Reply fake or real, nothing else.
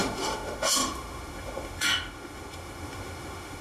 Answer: fake